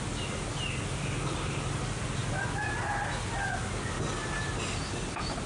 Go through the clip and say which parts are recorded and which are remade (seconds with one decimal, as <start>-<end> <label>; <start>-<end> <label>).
0.0-5.5 recorded